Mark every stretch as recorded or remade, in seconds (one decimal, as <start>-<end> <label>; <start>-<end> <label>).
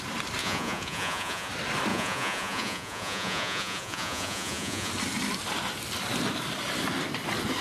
0.0-0.4 recorded; 0.4-1.5 remade; 1.5-1.9 recorded; 1.9-4.9 remade; 4.9-7.6 recorded